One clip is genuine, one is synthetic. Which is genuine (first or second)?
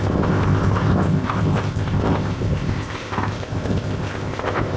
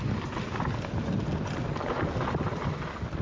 second